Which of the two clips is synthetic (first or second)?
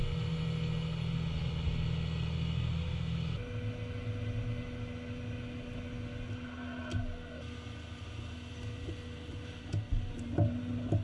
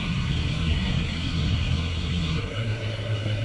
second